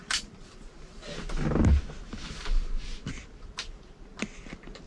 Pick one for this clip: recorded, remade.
recorded